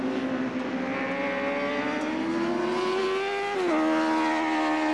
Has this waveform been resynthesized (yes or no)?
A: no